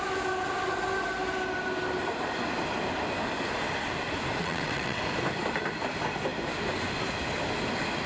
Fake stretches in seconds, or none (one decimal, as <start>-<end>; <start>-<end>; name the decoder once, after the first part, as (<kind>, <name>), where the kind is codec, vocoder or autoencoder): 4.4-5.0 (vocoder, WaveNeXt)